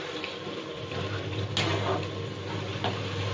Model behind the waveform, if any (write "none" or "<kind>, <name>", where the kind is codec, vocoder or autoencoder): none